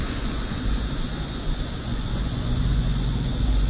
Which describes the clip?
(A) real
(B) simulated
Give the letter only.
B